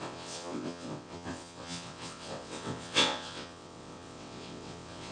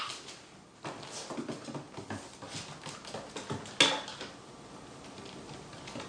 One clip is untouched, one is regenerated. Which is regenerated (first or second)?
first